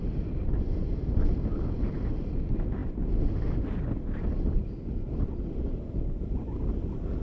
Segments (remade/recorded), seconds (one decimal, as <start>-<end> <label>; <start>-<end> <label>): 0.0-7.2 recorded